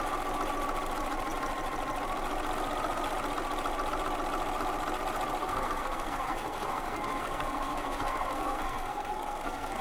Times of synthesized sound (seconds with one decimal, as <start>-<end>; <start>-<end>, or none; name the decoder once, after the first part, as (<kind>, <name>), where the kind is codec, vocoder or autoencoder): 5.4-9.8 (codec, SNAC)